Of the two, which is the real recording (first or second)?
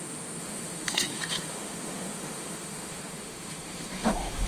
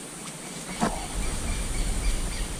second